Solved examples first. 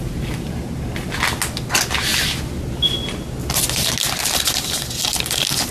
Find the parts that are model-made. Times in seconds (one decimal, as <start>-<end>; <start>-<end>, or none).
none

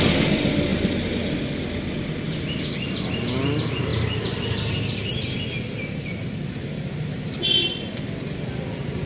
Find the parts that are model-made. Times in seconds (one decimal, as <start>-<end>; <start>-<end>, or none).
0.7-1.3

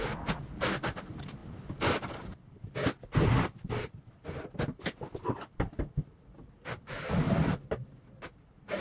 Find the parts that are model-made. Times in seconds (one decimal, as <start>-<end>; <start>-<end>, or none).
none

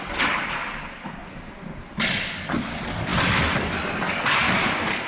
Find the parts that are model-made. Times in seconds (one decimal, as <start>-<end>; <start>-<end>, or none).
3.1-3.7; 4.4-5.1

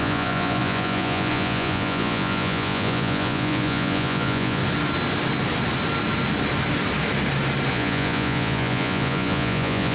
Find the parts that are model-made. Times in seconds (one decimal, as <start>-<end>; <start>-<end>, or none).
0.0-4.6; 7.7-9.9